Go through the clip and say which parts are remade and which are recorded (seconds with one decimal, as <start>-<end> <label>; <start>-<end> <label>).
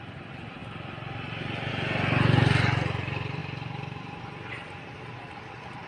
0.0-5.9 recorded